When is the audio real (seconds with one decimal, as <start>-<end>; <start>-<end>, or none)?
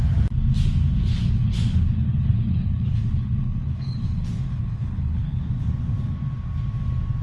0.0-1.1; 5.4-7.2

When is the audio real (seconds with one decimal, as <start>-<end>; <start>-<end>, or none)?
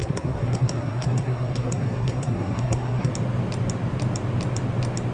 3.1-5.1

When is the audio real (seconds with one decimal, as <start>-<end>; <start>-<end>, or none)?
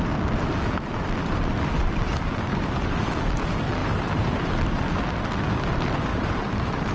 0.0-2.5; 3.1-3.8; 4.5-6.1